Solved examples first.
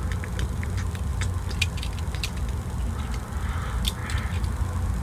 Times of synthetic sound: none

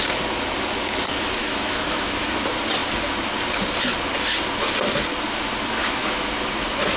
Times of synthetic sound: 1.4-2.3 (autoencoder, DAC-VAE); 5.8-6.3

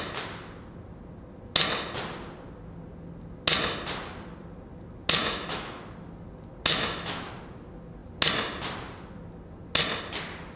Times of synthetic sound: 5.2-5.8 (autoencoder, DAC-VAE); 6.7-7.3

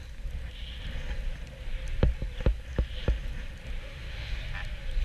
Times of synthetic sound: 3.8-4.4 (autoencoder, DAC-VAE)

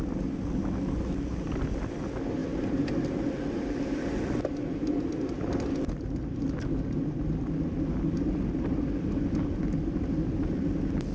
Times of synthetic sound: none

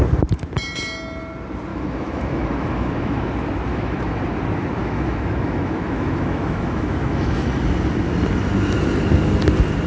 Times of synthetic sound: 1.7-3.3 (autoencoder, DAC-VAE); 3.7-4.2; 4.8-7.6

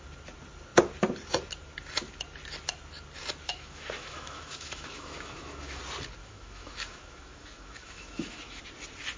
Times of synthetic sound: 3.5-5.8 (autoencoder, DAC-VAE); 6.2-8.6